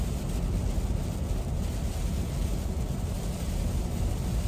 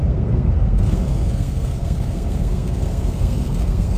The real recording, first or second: first